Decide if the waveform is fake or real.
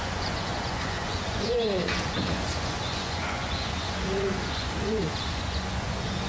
fake